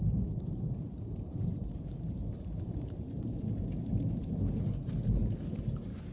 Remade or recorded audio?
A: remade